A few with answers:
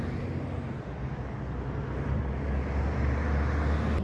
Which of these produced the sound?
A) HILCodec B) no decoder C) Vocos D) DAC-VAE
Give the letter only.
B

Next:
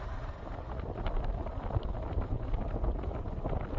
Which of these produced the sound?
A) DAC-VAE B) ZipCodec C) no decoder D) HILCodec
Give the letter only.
C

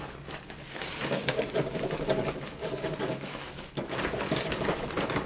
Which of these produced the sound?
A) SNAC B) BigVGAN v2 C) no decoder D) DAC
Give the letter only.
D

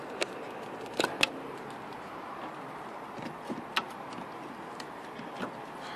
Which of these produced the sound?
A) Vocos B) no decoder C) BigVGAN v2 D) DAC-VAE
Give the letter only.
B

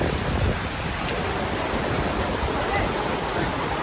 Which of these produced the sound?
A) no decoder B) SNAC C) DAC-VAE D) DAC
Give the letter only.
A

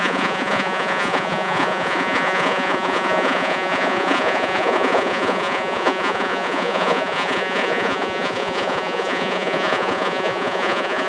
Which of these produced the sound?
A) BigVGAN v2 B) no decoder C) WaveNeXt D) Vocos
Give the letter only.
D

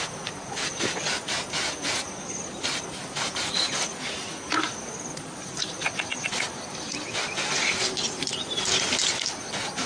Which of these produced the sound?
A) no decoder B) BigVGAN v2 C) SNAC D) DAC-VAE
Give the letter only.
A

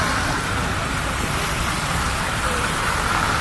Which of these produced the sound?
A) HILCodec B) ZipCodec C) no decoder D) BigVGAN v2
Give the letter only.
D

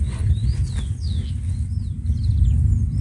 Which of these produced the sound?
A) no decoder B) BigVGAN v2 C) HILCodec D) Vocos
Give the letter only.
A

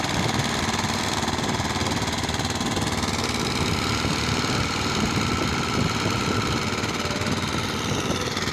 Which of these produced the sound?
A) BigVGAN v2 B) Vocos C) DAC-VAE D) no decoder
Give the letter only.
A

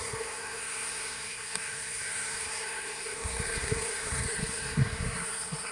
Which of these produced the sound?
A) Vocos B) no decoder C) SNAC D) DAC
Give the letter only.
C